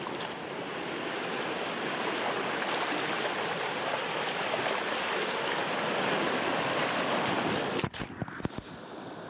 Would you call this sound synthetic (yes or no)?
no